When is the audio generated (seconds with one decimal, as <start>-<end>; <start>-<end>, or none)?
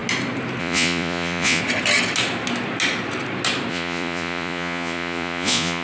0.6-1.6; 3.7-5.8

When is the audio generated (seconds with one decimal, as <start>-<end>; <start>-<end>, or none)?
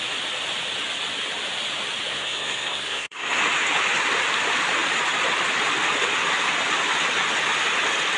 2.1-3.4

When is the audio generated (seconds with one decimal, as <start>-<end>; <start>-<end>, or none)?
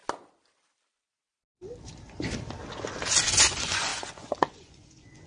3.2-5.3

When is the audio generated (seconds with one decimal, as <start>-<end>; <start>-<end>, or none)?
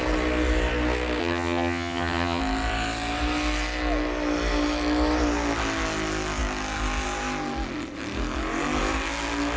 1.2-2.4